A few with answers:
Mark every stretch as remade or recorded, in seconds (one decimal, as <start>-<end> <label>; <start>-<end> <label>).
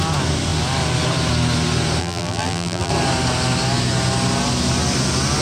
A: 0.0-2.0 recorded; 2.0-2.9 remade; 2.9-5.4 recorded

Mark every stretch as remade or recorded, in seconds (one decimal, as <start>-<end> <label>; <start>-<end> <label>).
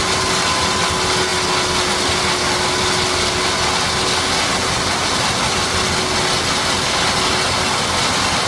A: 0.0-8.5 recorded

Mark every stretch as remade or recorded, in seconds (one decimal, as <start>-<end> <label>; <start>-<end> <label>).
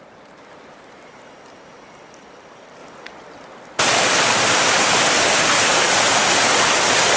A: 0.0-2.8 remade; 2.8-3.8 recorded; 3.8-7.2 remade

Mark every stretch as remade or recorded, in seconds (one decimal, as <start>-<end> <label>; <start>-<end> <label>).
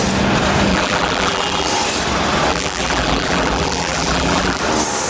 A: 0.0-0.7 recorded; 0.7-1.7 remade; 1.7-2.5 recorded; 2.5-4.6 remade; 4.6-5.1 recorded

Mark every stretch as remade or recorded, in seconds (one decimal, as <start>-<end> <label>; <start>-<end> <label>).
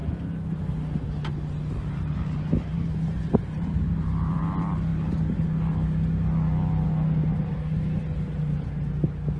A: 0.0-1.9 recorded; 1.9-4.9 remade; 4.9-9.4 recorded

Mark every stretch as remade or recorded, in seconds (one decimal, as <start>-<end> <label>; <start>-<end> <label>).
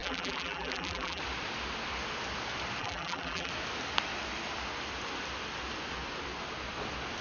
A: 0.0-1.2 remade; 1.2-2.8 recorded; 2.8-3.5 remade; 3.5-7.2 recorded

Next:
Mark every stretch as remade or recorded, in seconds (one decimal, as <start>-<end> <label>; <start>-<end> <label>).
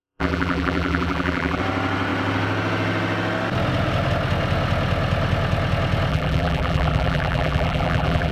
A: 0.0-1.6 remade; 1.6-6.1 recorded; 6.1-8.3 remade